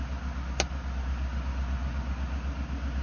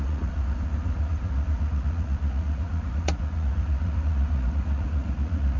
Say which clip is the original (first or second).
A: first